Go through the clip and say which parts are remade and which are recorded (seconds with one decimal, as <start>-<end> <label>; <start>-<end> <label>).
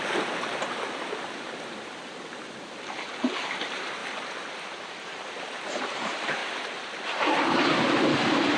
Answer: 0.0-4.0 remade; 4.0-4.8 recorded; 4.8-8.6 remade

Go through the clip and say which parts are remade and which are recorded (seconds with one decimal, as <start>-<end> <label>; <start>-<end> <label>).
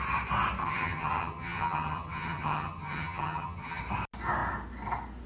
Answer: 0.0-0.6 recorded; 0.6-3.8 remade; 3.8-5.3 recorded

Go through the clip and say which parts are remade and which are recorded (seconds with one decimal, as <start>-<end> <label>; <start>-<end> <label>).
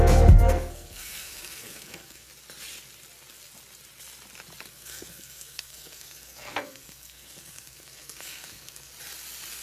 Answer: 0.0-2.3 remade; 2.3-4.7 recorded; 4.7-8.9 remade; 8.9-9.6 recorded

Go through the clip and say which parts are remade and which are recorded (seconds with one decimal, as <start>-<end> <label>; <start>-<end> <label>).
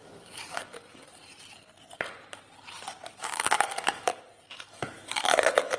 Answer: 0.0-1.2 remade; 1.2-3.2 recorded; 3.2-4.1 remade; 4.1-4.7 recorded; 4.7-5.8 remade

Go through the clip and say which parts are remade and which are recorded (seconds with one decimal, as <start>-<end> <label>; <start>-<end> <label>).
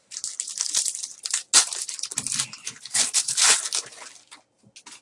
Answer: 0.0-2.6 recorded; 2.6-3.6 remade; 3.6-5.0 recorded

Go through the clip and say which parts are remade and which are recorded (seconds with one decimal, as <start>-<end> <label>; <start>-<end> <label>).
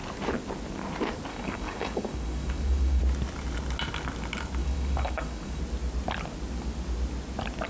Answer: 0.0-1.3 recorded; 1.3-3.0 remade; 3.0-4.6 recorded; 4.6-5.6 remade; 5.6-7.7 recorded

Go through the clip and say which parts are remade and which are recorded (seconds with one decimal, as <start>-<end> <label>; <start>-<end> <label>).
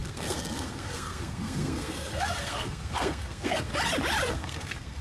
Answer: 0.0-3.7 remade; 3.7-4.3 recorded; 4.3-5.0 remade